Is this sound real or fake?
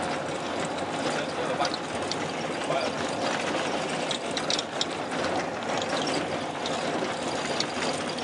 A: real